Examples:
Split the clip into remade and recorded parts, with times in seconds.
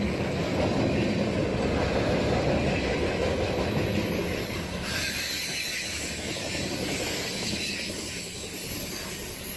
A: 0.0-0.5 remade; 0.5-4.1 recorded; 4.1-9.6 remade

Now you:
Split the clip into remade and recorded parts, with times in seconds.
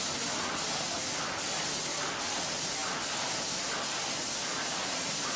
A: 0.0-5.4 recorded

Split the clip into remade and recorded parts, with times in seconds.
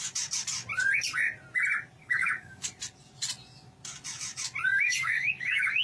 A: 0.0-2.0 recorded; 2.0-2.7 remade; 2.7-4.7 recorded; 4.7-5.8 remade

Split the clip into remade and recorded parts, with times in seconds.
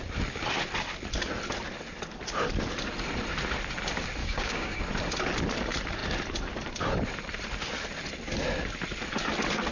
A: 0.0-4.2 recorded; 4.2-4.8 remade; 4.8-9.7 recorded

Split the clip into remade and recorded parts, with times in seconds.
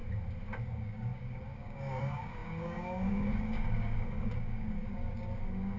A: 0.0-0.6 recorded; 0.6-5.8 remade